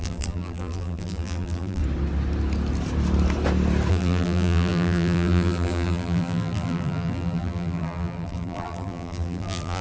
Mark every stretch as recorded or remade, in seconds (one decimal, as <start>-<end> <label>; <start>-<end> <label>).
0.0-1.8 remade; 1.8-3.9 recorded; 3.9-9.8 remade